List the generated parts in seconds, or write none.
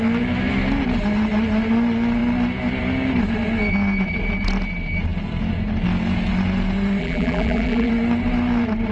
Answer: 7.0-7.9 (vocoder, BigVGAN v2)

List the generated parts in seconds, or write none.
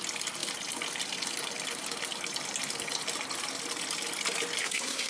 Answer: 4.6-5.1 (codec, SNAC)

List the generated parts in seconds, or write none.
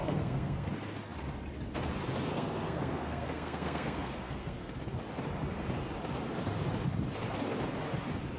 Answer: 0.0-0.7 (codec, SNAC); 2.3-4.8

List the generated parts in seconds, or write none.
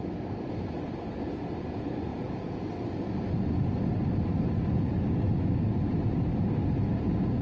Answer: 2.1-2.7 (vocoder, Vocos)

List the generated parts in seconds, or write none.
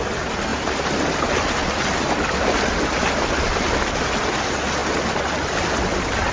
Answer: none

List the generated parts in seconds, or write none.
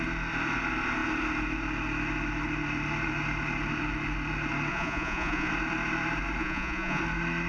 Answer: 4.7-5.5 (vocoder, Vocos); 6.4-7.0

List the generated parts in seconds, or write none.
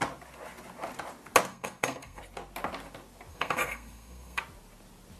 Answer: 1.5-2.2 (codec, SNAC); 3.3-4.4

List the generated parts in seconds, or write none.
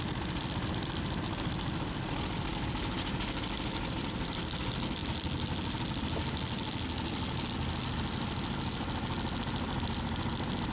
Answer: none